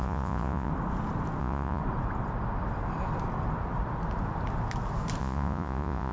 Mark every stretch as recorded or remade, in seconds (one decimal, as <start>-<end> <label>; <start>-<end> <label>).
0.0-0.7 remade; 0.7-1.4 recorded; 1.4-1.8 remade; 1.8-5.2 recorded; 5.2-6.1 remade